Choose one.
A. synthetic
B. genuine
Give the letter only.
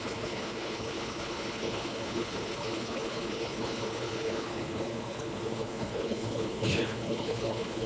A